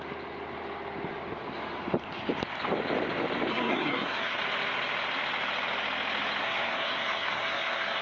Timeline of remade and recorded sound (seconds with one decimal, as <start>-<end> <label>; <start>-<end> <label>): 0.0-3.5 recorded; 3.5-4.4 remade; 4.4-6.4 recorded; 6.4-8.0 remade